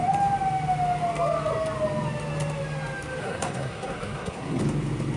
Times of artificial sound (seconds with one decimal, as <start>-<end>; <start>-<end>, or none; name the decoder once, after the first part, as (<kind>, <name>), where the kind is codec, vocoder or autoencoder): 3.2-4.6 (codec, SNAC)